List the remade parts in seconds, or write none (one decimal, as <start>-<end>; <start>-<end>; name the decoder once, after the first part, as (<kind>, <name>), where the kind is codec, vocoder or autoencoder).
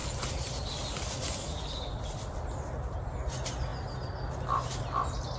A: none